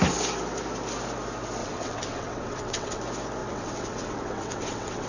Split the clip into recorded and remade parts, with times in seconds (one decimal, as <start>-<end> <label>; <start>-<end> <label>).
0.0-1.6 recorded; 1.6-3.0 remade; 3.0-3.4 recorded; 3.4-5.1 remade